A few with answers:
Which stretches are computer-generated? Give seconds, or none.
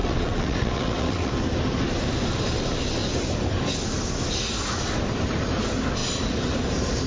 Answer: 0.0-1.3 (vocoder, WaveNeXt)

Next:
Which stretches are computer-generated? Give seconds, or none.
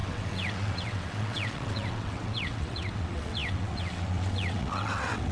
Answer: 0.0-5.3 (vocoder, WaveNeXt)